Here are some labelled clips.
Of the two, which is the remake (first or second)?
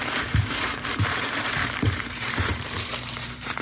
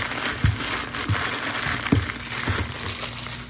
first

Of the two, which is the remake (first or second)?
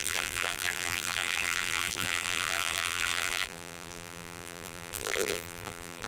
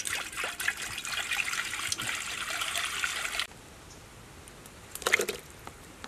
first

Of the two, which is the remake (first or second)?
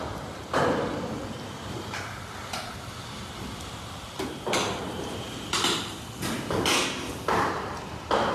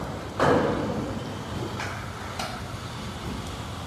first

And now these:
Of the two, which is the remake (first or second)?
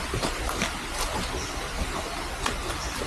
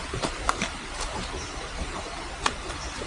second